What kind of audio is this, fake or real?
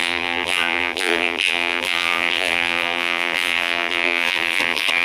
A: fake